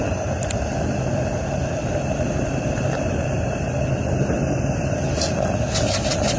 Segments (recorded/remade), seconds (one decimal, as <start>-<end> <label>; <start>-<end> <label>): 0.0-0.4 recorded; 0.4-3.9 remade; 3.9-6.4 recorded